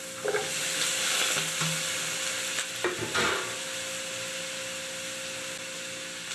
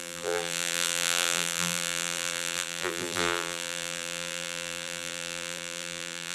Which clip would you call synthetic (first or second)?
second